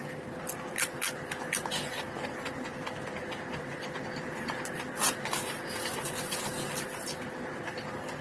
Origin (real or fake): real